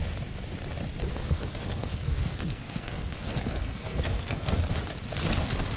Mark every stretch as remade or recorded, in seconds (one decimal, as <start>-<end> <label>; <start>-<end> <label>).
0.0-1.1 recorded; 1.1-4.6 remade; 4.6-5.8 recorded